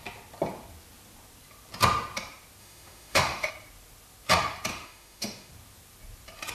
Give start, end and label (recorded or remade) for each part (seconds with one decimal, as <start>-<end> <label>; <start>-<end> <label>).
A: 0.0-2.6 recorded; 2.6-3.5 remade; 3.5-4.7 recorded; 4.7-5.5 remade; 5.5-6.5 recorded